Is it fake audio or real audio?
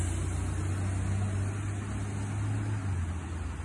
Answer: real